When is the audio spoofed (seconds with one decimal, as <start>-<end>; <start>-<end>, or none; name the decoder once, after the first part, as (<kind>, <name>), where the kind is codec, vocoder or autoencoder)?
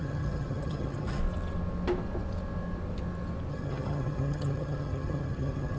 0.0-1.2 (vocoder, HiFi-GAN); 3.5-5.8